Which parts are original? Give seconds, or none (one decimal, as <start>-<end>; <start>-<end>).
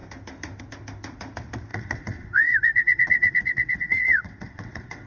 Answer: 0.0-1.7